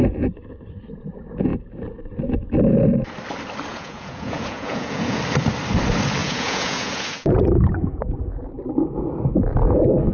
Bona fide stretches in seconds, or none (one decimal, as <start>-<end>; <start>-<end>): 0.0-3.7; 5.2-6.2; 8.5-10.1